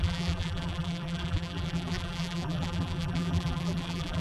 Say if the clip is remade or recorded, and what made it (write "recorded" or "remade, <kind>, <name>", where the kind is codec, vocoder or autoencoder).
remade, vocoder, BigVGAN v2